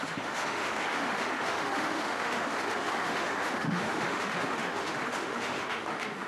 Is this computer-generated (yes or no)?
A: yes